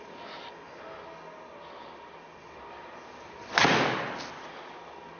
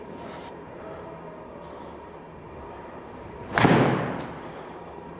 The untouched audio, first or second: first